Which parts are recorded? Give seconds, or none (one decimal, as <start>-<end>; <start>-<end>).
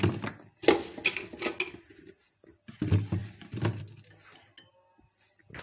0.0-5.6